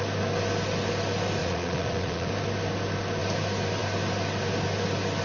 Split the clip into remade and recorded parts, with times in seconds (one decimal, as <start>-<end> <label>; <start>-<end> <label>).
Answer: 0.0-1.4 recorded; 1.4-2.3 remade; 2.3-5.2 recorded